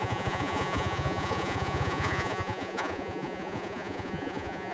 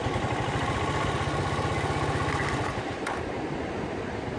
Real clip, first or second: second